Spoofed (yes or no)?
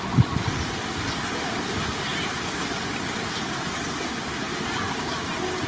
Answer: no